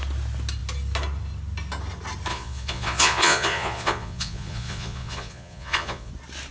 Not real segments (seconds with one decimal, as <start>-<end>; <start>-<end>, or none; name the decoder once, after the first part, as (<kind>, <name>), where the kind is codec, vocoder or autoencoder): 2.3-6.1 (vocoder, Vocos)

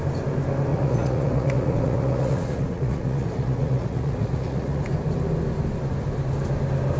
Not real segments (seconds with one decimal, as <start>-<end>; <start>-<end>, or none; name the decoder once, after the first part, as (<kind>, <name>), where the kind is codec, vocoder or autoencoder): 0.7-4.8 (vocoder, Vocos)